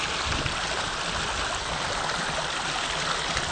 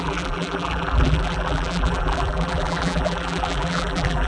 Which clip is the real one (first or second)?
first